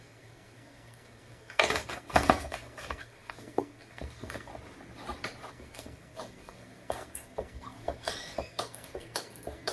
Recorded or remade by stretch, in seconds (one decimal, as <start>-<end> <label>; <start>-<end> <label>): 0.0-4.5 remade; 4.5-5.5 recorded; 5.5-9.7 remade